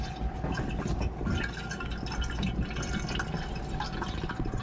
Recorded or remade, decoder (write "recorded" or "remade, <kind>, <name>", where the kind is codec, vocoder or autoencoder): recorded